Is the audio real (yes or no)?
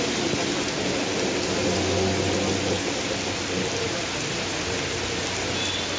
yes